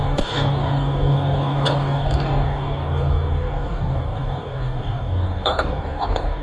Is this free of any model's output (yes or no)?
no